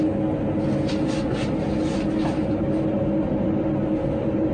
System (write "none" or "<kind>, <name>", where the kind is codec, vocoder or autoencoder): none